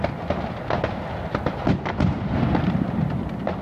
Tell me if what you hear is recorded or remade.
recorded